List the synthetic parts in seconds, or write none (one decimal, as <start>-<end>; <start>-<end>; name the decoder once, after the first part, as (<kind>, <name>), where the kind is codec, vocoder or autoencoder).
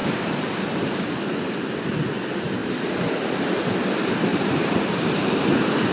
0.0-1.3 (vocoder, BigVGAN v2); 2.6-3.7; 4.3-5.9